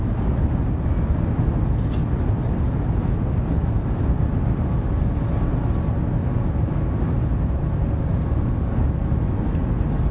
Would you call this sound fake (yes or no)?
no